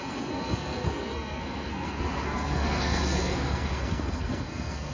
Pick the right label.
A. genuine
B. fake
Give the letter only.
B